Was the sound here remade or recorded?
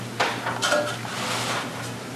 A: recorded